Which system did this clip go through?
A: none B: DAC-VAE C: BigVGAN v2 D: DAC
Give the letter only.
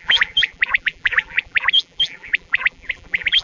C